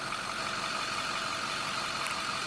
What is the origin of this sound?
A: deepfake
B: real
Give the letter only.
B